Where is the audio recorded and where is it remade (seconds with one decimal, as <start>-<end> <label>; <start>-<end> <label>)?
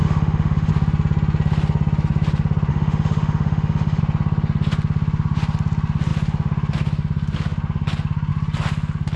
0.0-0.7 remade; 0.7-2.7 recorded; 2.7-4.0 remade; 4.0-9.2 recorded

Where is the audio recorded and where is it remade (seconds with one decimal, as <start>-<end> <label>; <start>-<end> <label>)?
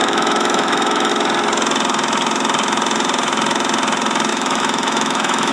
0.0-1.1 remade; 1.1-4.3 recorded; 4.3-5.5 remade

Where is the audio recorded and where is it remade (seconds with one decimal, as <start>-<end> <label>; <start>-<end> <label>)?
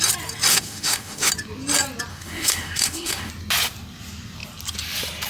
0.0-0.5 recorded; 0.5-1.3 remade; 1.3-2.1 recorded; 2.1-3.3 remade; 3.3-5.3 recorded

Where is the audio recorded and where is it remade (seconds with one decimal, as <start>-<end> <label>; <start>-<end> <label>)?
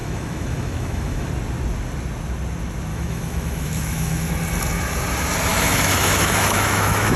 0.0-1.3 remade; 1.3-2.9 recorded; 2.9-4.3 remade; 4.3-5.5 recorded; 5.5-7.2 remade